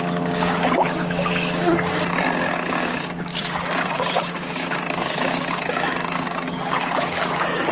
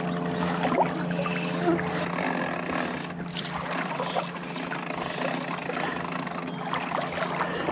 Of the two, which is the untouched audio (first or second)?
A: second